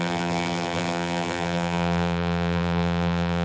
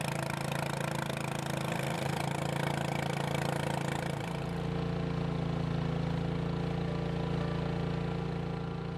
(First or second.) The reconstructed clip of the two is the first